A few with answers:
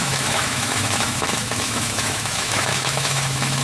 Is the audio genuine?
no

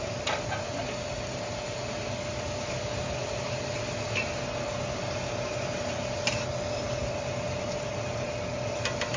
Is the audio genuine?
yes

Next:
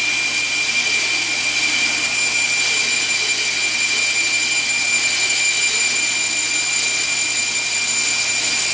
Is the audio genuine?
yes